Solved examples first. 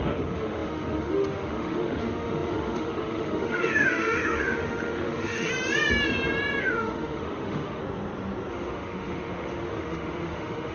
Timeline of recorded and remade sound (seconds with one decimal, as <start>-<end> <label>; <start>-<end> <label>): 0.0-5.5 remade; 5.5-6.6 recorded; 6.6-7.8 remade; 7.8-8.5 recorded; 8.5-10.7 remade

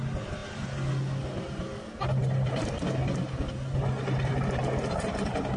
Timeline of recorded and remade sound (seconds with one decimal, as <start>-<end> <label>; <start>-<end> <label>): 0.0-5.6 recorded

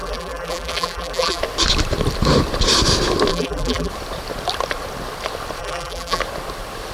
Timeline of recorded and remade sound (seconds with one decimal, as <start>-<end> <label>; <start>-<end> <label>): 0.0-1.4 remade; 1.4-3.3 recorded; 3.3-3.9 remade; 3.9-5.6 recorded; 5.6-6.2 remade; 6.2-6.9 recorded